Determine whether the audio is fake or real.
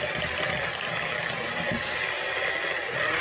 real